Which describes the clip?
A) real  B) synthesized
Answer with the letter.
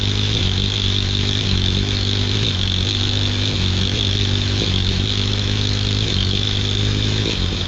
B